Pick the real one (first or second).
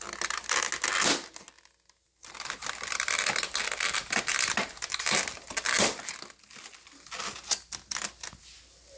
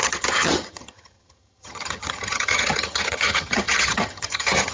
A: first